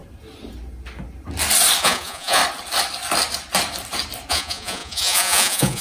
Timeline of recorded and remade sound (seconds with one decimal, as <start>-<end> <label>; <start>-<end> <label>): 0.0-1.8 recorded; 1.8-2.4 remade; 2.4-4.3 recorded; 4.3-5.8 remade